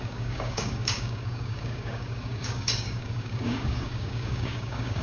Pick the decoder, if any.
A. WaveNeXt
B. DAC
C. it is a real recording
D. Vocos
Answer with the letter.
B